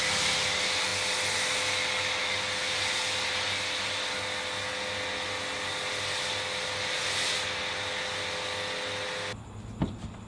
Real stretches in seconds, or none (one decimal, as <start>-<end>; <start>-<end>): 0.0-10.3